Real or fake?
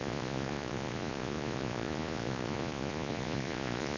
fake